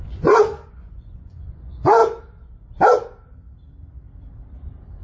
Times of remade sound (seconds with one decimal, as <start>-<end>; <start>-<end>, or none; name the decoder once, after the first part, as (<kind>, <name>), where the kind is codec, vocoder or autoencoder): 0.0-2.0 (vocoder, Vocos)